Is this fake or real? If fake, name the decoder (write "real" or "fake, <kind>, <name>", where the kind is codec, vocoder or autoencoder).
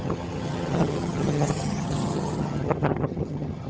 fake, vocoder, HiFi-GAN